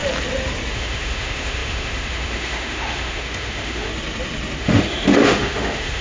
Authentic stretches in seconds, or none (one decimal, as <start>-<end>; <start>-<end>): 0.0-0.7; 3.9-4.6